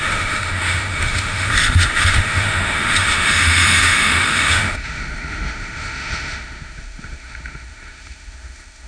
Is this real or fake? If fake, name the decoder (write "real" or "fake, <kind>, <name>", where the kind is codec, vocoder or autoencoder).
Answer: fake, autoencoder, DAC-VAE